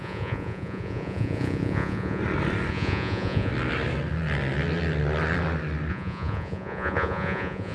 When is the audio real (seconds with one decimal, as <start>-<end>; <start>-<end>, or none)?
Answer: 2.2-2.7; 3.5-5.9